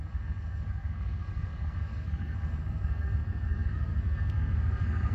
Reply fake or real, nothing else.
fake